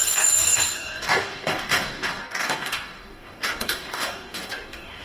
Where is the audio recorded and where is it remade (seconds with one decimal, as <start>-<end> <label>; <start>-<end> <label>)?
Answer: 0.0-5.0 remade